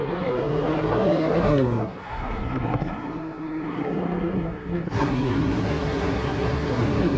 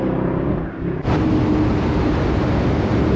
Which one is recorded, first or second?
second